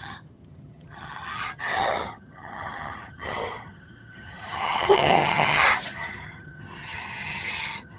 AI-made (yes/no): yes